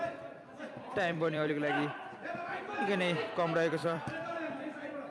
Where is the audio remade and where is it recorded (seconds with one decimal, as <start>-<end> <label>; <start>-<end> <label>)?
0.0-0.9 recorded; 0.9-2.7 remade; 2.7-3.8 recorded; 3.8-5.1 remade